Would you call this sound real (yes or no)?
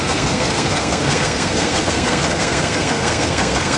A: no